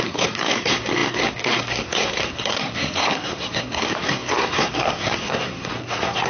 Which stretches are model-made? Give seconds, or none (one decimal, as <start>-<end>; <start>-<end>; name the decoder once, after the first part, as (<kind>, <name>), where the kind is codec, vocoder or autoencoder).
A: 0.0-6.3 (codec, SNAC)